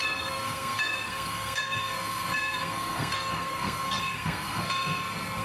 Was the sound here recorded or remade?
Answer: remade